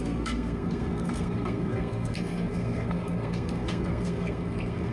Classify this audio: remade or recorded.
remade